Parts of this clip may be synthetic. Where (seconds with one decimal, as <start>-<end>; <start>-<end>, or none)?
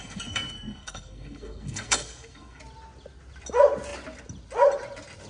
0.0-2.6